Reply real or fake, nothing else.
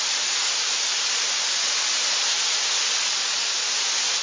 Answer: real